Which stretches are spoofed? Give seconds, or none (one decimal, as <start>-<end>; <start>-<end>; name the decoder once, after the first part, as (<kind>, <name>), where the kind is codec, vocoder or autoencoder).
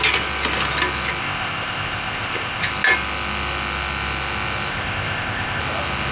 1.2-2.7 (codec, ZipCodec); 4.7-5.6